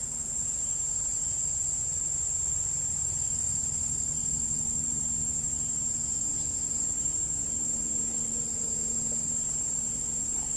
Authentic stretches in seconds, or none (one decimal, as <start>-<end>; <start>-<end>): 0.0-6.3; 7.5-10.6